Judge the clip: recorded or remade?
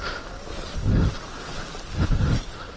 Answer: recorded